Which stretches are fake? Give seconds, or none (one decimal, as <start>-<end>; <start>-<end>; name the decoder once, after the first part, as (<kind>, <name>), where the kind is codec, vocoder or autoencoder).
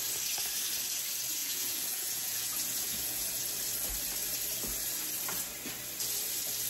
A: 1.4-3.4 (vocoder, Vocos)